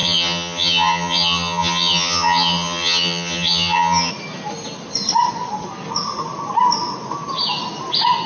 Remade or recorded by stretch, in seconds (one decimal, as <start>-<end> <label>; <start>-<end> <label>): 0.0-4.1 remade; 4.1-8.3 recorded